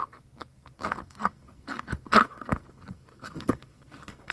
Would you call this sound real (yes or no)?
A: no